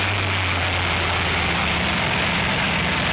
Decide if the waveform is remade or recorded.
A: recorded